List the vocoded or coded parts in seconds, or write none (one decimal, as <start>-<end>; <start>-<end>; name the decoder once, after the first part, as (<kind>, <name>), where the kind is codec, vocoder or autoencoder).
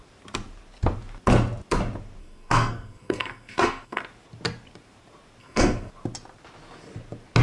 2.2-4.0 (codec, SNAC); 5.4-5.9